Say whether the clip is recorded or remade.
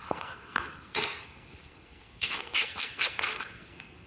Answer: remade